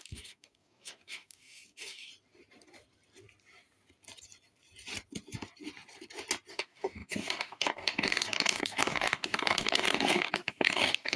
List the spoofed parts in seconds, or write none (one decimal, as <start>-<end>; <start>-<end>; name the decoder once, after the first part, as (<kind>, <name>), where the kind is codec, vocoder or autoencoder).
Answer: 0.0-2.1 (codec, DAC); 6.5-11.2